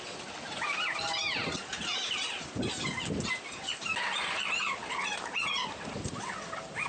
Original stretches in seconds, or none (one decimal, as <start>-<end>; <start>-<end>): 0.0-6.9